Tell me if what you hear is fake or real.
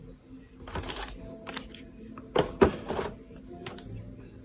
real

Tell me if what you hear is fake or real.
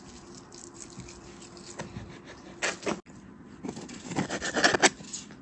real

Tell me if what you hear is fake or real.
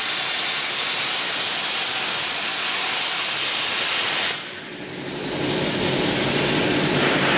real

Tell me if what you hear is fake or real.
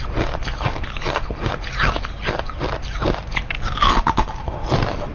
real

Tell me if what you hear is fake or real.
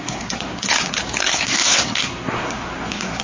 fake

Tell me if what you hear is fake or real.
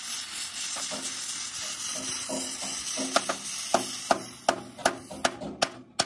real